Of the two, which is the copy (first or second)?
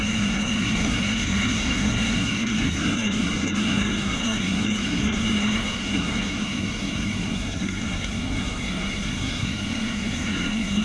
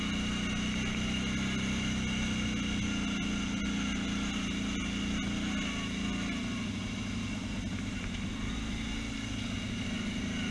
first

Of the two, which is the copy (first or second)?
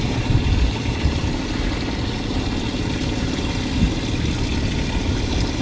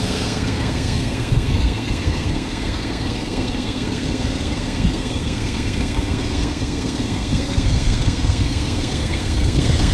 second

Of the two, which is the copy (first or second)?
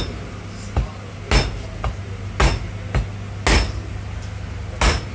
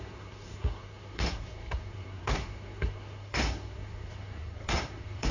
second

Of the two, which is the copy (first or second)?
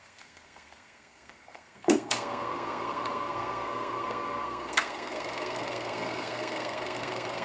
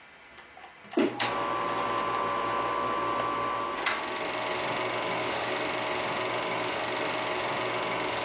first